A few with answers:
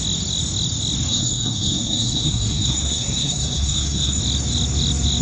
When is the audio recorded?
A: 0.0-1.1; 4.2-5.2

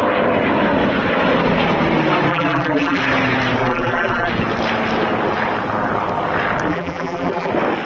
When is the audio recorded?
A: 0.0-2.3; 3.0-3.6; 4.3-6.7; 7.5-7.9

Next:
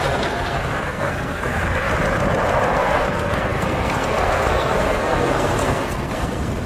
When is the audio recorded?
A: 1.9-2.7